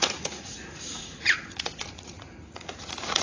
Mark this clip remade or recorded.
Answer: remade